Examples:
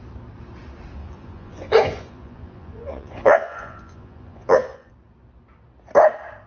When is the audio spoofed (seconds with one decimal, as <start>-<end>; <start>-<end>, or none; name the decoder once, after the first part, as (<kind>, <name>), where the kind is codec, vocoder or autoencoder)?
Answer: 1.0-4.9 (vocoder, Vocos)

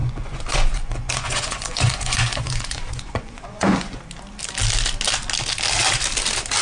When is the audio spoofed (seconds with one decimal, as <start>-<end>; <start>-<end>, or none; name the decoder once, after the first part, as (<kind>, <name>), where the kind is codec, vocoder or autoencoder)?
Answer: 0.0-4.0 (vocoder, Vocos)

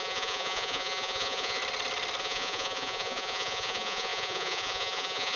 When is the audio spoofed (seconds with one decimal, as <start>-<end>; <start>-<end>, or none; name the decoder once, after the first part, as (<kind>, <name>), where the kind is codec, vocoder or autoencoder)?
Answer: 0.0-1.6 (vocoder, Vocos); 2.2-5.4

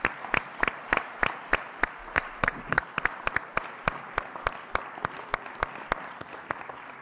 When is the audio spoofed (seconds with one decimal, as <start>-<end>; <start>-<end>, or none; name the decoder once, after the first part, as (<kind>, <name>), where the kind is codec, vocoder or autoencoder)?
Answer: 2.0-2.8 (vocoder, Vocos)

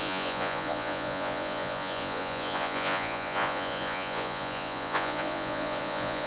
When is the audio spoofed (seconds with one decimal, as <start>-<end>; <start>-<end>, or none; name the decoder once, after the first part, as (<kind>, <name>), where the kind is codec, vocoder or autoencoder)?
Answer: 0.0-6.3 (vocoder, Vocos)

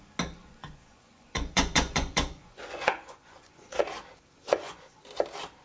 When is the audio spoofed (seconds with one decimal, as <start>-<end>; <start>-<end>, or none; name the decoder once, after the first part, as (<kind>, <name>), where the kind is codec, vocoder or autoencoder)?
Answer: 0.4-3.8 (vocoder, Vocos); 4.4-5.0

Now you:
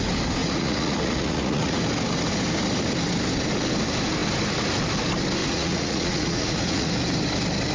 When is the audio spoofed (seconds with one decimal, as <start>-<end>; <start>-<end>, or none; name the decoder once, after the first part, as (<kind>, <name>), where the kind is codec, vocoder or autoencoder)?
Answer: 0.4-1.8 (vocoder, Vocos); 5.4-6.9

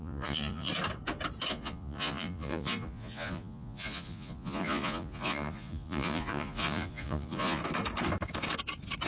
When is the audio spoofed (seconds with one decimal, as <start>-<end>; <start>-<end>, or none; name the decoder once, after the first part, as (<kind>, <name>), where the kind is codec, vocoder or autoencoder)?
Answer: 0.0-0.7 (vocoder, Vocos); 1.5-7.6